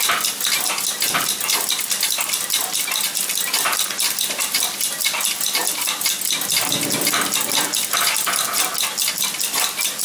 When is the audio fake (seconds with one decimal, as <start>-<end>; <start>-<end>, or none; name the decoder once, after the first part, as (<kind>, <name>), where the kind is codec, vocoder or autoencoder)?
none